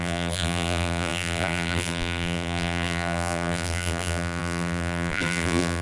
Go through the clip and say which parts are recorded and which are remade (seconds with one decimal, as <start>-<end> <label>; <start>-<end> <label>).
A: 0.0-5.8 remade